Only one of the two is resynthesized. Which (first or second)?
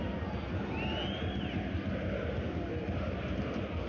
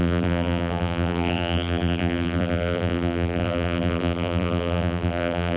second